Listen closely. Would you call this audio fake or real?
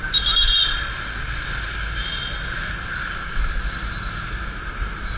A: real